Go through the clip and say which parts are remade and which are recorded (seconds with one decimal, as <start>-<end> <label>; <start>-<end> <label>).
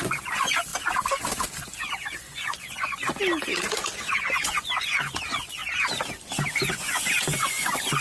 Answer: 0.0-0.7 remade; 0.7-1.8 recorded; 1.8-3.1 remade; 3.1-4.1 recorded; 4.1-5.6 remade; 5.6-6.7 recorded; 6.7-8.0 remade